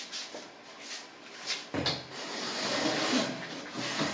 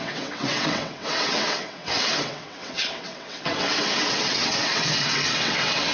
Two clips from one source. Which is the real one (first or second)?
first